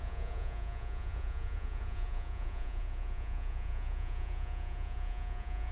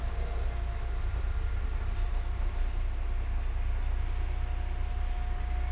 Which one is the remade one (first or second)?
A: first